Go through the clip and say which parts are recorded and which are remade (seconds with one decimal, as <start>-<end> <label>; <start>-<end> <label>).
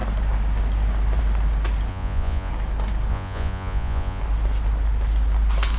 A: 0.0-1.9 recorded; 1.9-2.5 remade; 2.5-3.1 recorded; 3.1-4.2 remade; 4.2-5.8 recorded